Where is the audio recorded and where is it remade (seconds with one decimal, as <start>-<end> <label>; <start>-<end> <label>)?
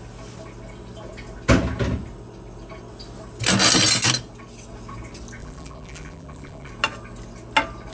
0.0-5.4 recorded; 5.4-6.7 remade; 6.7-7.9 recorded